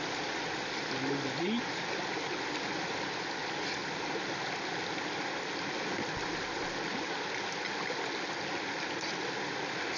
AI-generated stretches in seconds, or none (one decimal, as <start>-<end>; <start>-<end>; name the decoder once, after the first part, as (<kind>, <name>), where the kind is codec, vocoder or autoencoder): none